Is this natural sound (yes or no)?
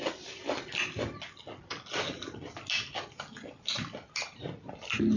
yes